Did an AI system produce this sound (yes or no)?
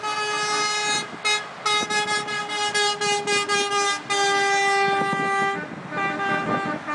no